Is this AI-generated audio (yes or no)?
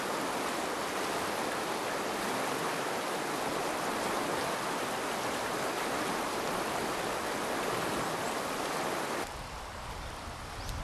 no